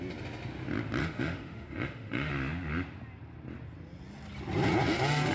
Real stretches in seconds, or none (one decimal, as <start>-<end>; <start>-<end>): 0.0-1.0; 2.3-5.3